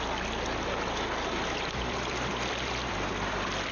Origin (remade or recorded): recorded